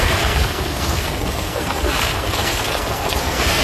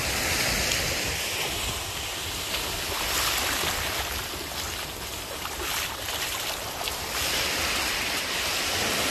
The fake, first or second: first